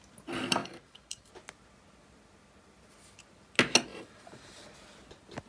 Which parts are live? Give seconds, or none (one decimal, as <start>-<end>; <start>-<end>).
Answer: 0.0-0.6; 1.3-3.9; 4.6-5.5